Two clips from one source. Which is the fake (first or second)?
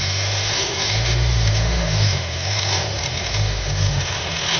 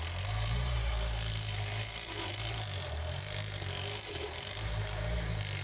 first